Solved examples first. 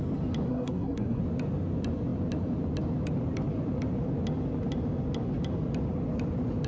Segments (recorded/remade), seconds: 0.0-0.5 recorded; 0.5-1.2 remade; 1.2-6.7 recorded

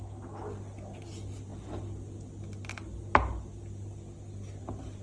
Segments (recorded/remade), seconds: 0.0-5.0 recorded